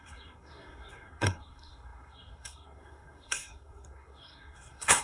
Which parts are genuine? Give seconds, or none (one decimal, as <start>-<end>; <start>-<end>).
none